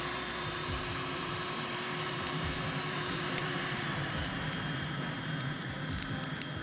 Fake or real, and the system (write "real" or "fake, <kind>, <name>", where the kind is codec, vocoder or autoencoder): fake, vocoder, BigVGAN v2